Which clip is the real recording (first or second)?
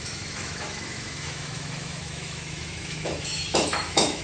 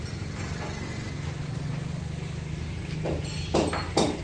second